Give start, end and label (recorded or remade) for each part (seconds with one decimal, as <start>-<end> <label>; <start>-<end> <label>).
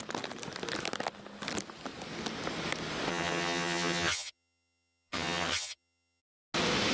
0.0-3.1 recorded; 3.1-6.2 remade; 6.2-6.9 recorded